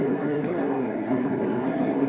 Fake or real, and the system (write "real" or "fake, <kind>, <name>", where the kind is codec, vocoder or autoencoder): fake, codec, SNAC